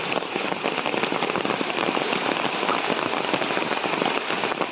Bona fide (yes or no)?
no